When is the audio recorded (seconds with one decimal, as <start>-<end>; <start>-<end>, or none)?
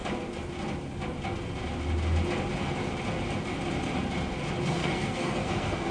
0.0-4.8